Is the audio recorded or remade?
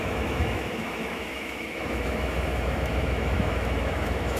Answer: remade